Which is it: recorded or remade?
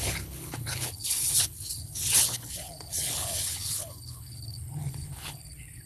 remade